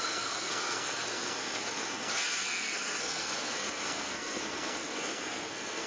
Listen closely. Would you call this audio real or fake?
fake